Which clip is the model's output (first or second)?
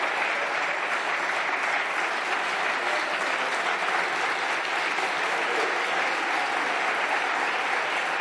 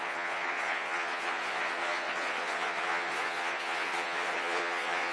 second